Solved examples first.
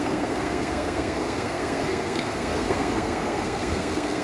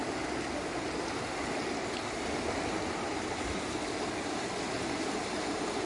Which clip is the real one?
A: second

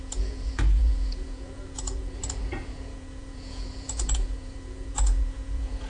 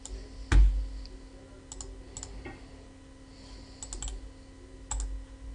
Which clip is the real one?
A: second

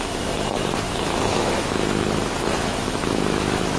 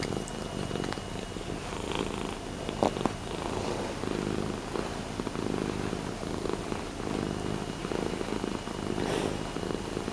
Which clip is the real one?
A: second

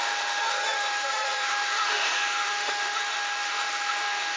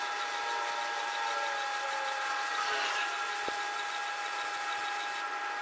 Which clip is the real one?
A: second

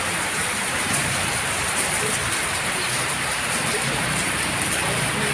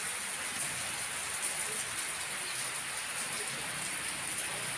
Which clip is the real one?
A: second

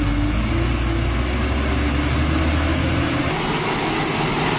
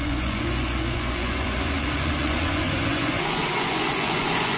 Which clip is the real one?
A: first